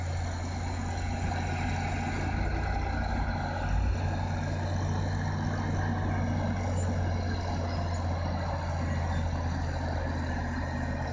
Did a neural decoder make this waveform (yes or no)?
no